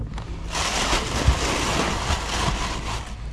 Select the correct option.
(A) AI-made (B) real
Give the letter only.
B